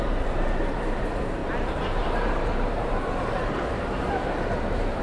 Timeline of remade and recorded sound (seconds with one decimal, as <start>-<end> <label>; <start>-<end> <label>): 0.0-5.0 remade